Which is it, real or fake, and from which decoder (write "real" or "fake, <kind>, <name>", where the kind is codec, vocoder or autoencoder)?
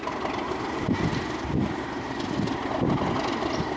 real